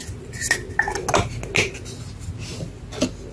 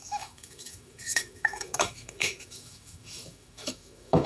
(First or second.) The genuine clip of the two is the first